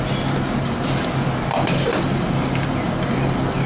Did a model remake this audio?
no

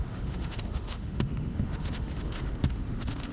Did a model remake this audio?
yes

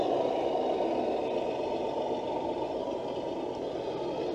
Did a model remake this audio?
no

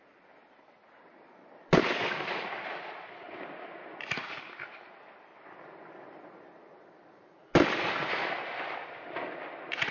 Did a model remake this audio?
no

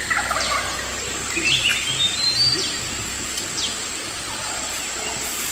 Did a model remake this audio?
no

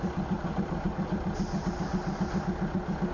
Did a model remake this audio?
no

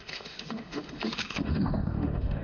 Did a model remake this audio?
yes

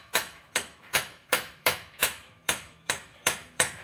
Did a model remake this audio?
yes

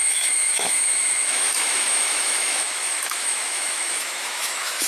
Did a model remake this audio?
yes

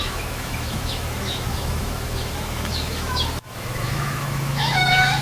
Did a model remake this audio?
yes